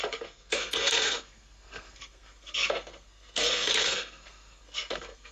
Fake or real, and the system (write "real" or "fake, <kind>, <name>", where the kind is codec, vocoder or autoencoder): fake, codec, SNAC